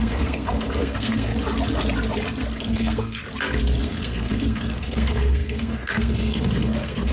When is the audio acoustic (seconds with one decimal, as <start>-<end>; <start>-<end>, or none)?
1.3-2.5; 3.2-3.8